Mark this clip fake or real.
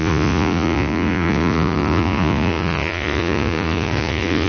fake